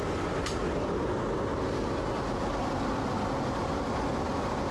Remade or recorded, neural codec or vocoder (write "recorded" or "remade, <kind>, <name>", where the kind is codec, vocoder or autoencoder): recorded